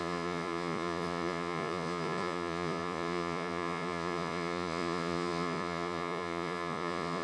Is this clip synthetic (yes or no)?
yes